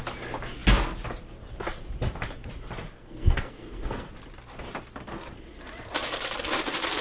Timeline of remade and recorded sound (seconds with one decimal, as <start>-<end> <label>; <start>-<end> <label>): 0.0-2.9 recorded; 2.9-4.1 remade; 4.1-7.0 recorded

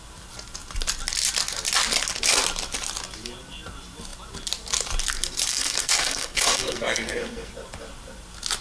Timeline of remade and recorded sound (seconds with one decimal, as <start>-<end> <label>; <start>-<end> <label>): 0.0-5.5 recorded; 5.5-7.5 remade; 7.5-8.6 recorded

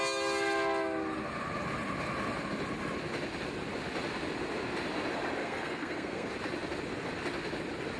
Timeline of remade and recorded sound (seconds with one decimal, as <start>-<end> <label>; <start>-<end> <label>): 0.0-5.4 recorded; 5.4-6.3 remade; 6.3-8.0 recorded

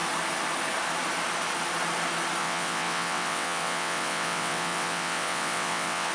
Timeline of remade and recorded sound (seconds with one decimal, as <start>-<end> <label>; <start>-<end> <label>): 0.0-2.4 recorded; 2.4-6.1 remade

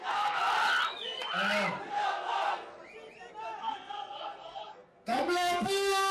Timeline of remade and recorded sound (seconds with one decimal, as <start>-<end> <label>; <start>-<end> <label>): 0.0-0.4 remade; 0.4-1.9 recorded; 1.9-2.8 remade; 2.8-3.6 recorded; 3.6-6.1 remade